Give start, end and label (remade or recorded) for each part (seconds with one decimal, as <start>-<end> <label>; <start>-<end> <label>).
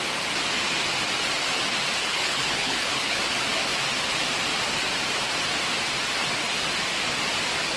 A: 0.0-2.0 recorded; 2.0-3.2 remade; 3.2-7.8 recorded